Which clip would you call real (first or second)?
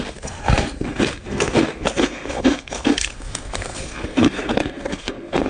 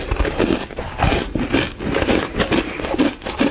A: second